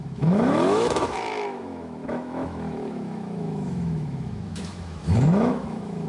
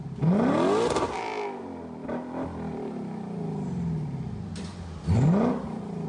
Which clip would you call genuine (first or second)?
second